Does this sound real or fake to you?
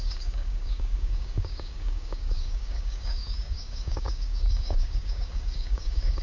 fake